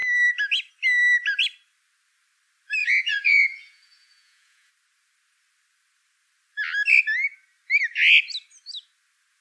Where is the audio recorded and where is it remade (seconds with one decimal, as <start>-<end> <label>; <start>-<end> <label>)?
0.0-2.8 recorded; 2.8-4.7 remade; 4.7-9.4 recorded